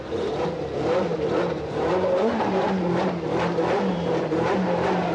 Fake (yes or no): yes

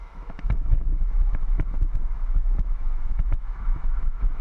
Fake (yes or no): yes